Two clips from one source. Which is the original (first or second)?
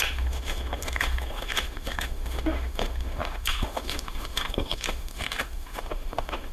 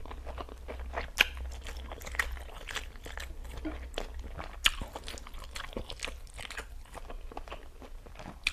second